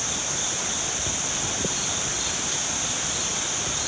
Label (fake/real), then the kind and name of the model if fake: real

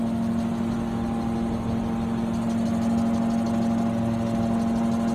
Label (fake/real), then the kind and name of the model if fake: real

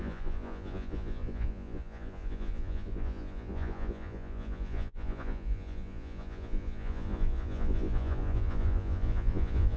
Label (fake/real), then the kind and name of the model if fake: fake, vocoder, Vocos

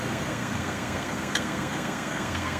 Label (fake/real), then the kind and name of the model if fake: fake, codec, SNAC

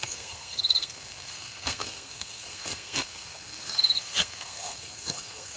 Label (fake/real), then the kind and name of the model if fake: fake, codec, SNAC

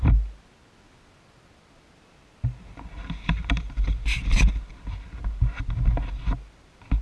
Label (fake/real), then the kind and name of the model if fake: real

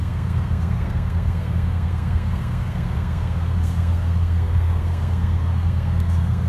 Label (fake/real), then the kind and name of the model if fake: fake, codec, SNAC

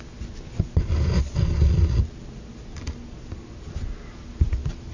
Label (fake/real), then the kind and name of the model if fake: real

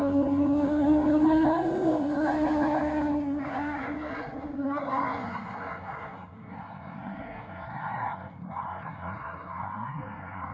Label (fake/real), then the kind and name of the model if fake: fake, codec, SNAC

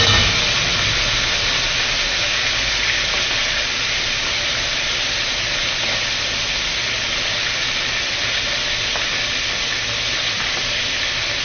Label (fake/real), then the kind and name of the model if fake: real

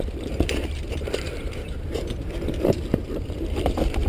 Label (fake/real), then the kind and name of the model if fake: fake, vocoder, BigVGAN v2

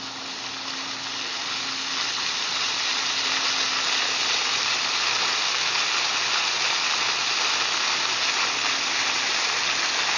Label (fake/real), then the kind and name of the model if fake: real